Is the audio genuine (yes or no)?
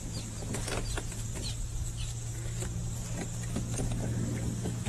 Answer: yes